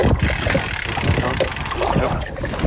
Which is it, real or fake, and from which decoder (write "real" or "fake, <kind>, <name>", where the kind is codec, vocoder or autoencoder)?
real